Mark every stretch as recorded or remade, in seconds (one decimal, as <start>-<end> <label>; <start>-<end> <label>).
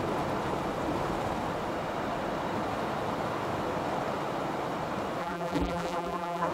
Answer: 0.0-5.2 recorded; 5.2-6.5 remade